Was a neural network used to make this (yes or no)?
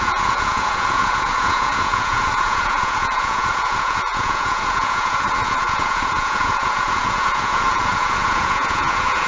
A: yes